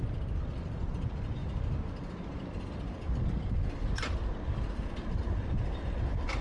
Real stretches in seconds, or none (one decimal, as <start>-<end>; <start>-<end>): 0.0-1.4; 5.2-6.4